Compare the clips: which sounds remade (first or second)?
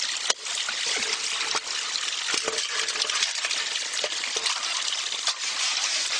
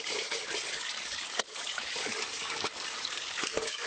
second